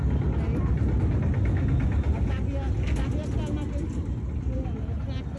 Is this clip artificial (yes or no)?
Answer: no